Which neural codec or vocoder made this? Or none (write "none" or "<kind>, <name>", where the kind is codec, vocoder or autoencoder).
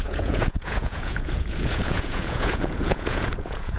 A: vocoder, Vocos